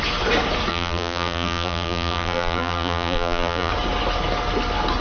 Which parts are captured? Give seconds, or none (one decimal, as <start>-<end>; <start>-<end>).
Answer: 0.0-0.7; 3.7-5.0

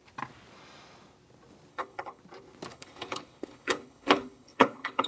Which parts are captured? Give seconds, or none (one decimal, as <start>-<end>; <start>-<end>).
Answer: 0.0-1.7; 2.2-2.7